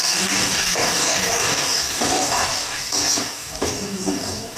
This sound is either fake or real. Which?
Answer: fake